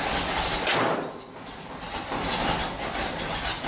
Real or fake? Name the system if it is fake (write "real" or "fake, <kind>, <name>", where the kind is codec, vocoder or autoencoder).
real